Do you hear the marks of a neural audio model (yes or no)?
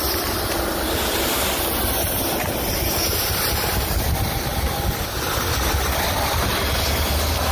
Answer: no